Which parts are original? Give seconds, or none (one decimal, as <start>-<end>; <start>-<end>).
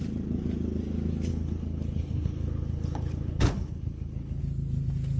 0.0-1.3; 4.4-5.2